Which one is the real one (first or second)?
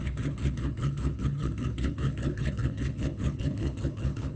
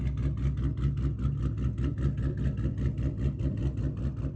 second